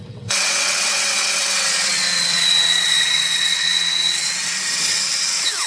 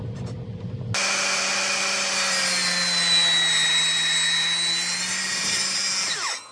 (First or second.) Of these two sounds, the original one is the second